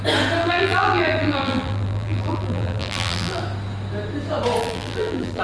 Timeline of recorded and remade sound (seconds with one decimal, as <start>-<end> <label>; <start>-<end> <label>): 0.0-0.4 recorded; 0.4-3.4 remade; 3.4-4.6 recorded; 4.6-5.4 remade